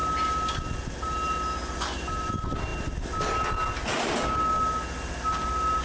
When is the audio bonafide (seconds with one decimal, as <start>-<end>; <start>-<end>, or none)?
0.0-5.8